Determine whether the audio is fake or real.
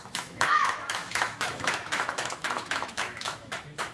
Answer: fake